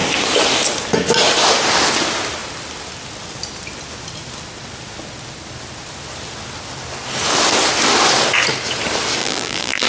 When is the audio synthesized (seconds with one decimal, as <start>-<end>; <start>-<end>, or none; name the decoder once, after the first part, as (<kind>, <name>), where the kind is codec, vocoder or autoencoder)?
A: 9.2-9.9 (vocoder, BigVGAN v2)